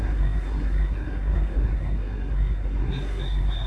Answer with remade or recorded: remade